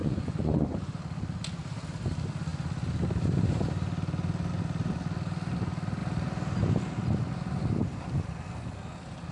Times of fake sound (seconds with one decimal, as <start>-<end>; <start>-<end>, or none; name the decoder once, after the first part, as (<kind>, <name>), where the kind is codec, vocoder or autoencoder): 0.0-1.0 (vocoder, Vocos)